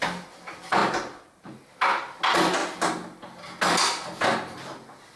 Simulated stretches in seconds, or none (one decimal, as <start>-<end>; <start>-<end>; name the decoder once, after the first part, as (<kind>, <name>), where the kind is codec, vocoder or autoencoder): 0.8-1.5 (vocoder, BigVGAN v2)